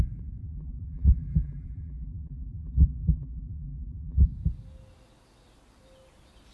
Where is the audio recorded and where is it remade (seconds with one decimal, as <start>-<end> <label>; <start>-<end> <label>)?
0.0-0.4 recorded; 0.4-4.3 remade; 4.3-6.5 recorded